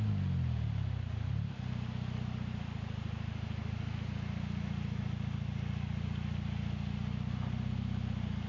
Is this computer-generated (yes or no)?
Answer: no